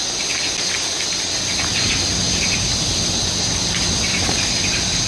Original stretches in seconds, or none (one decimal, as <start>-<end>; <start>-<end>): 0.0-5.1